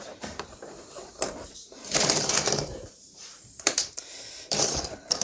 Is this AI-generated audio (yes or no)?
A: yes